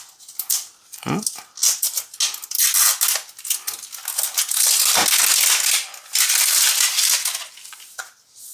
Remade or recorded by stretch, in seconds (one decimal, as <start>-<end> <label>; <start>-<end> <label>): 0.0-8.5 recorded

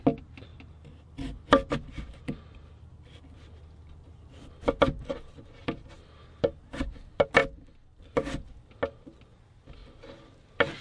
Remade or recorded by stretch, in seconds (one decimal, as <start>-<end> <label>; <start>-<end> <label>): 0.0-10.8 recorded

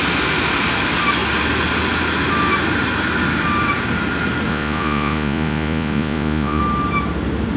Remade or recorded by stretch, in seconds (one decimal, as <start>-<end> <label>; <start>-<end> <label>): 0.0-4.5 recorded; 4.5-6.6 remade; 6.6-7.6 recorded

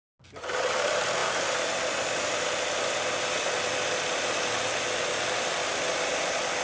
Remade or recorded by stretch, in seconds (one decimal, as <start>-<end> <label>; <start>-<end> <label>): 0.0-6.6 recorded

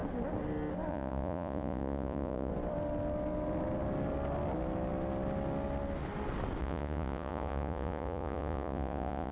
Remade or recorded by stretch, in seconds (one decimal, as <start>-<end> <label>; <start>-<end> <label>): 0.0-0.9 recorded; 0.9-2.5 remade; 2.5-6.6 recorded; 6.6-9.3 remade